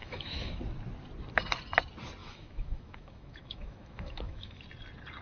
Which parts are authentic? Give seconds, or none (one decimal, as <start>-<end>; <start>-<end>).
0.6-2.2; 4.6-5.2